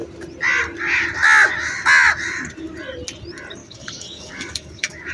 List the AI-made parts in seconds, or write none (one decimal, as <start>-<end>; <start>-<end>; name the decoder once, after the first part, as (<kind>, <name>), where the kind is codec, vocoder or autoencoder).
3.6-5.1 (codec, DAC)